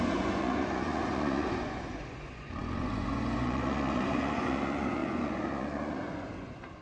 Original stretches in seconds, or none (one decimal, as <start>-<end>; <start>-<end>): none

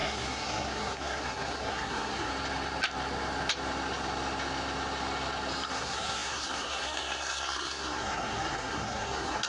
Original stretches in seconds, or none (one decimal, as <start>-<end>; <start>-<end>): 2.3-5.7

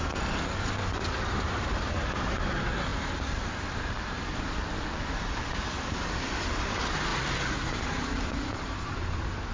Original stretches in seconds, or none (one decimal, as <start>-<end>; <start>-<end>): 0.0-7.1; 8.9-9.5

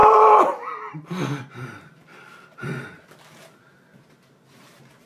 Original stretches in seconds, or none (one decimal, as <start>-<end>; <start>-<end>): 3.1-5.1

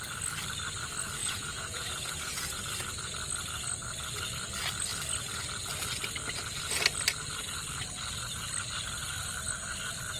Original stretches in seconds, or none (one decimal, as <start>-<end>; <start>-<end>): 0.0-1.2; 2.6-10.2

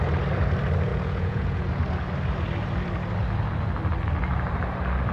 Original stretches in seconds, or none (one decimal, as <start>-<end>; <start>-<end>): 0.0-0.9; 1.7-5.1

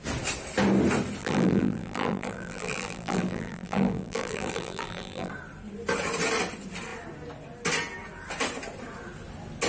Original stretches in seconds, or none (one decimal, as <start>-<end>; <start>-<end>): 0.0-1.2; 5.3-9.7

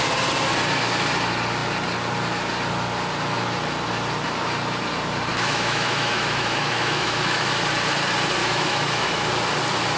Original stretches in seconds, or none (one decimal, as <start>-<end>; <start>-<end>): 0.0-5.3; 7.5-8.4; 9.3-10.0